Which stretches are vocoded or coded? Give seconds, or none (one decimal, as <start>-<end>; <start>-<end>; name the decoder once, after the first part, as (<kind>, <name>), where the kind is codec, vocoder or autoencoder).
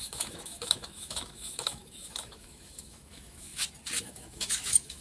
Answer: 0.0-3.5 (autoencoder, DAC-VAE); 4.0-5.0